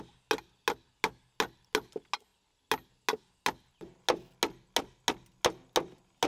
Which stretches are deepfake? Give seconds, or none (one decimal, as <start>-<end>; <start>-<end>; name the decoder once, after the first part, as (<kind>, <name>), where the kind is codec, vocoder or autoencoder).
none

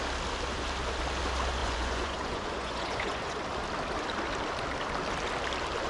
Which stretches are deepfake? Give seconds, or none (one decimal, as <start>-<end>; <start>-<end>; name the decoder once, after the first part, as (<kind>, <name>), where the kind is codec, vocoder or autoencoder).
1.6-3.4 (vocoder, Vocos)

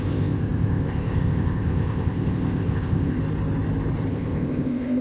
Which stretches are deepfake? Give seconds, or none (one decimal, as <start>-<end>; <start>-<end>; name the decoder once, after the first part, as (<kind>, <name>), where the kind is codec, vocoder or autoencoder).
0.0-3.2 (codec, ZipCodec); 4.1-5.0

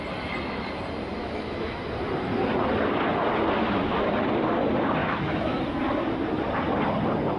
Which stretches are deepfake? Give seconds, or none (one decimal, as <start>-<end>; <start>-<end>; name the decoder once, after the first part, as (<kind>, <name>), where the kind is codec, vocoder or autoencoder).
1.2-1.8 (autoencoder, DAC-VAE); 5.0-5.6

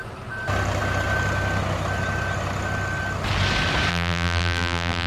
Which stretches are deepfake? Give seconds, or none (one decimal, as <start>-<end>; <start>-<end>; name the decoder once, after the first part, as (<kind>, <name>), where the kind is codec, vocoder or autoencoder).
3.9-5.1 (vocoder, BigVGAN v2)

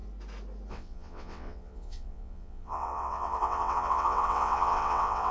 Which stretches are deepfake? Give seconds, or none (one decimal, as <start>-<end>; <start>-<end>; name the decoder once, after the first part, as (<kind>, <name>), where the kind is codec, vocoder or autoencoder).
0.7-5.3 (vocoder, WaveNeXt)

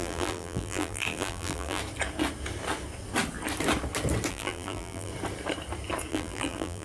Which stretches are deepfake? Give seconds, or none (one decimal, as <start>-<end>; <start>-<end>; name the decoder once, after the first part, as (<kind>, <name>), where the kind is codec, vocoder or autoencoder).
0.0-1.8 (vocoder, BigVGAN v2); 4.3-5.1; 6.1-6.8